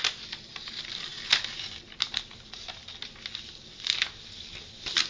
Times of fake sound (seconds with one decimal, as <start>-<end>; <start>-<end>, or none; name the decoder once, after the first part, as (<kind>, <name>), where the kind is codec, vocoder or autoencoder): none